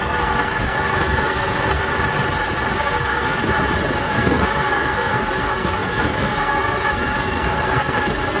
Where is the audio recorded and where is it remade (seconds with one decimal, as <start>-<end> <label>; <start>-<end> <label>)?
0.0-1.9 remade; 1.9-2.7 recorded; 2.7-3.4 remade; 3.4-4.0 recorded; 4.0-8.4 remade